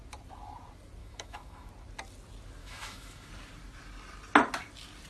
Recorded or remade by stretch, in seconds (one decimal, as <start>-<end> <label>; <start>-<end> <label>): 0.0-1.0 recorded; 1.0-1.7 remade; 1.7-2.6 recorded; 2.6-3.3 remade; 3.3-5.1 recorded